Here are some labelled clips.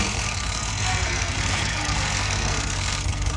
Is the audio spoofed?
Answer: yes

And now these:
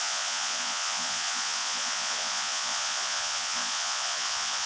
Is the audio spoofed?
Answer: yes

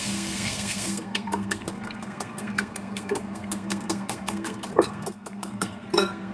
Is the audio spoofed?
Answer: yes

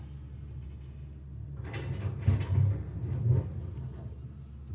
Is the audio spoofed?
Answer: no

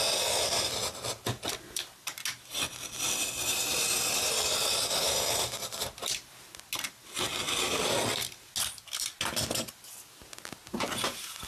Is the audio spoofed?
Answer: no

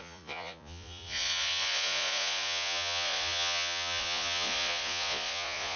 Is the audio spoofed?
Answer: yes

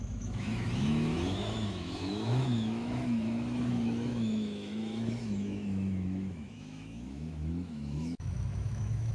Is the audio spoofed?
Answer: yes